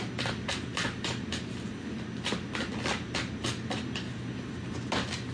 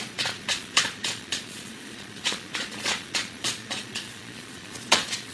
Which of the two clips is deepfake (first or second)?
second